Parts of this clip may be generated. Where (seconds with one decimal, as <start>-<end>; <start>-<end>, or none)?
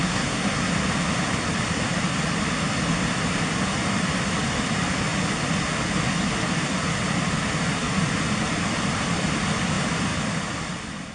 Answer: 0.0-0.7